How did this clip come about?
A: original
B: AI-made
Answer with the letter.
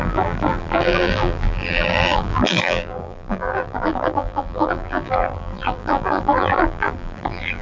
B